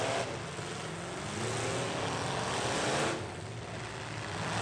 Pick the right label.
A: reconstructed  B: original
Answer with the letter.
B